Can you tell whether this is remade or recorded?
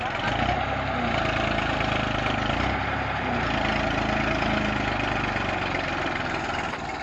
recorded